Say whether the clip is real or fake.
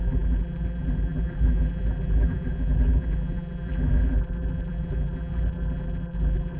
fake